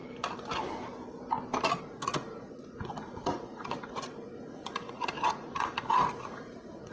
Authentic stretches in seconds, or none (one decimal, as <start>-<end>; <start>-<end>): 0.0-1.8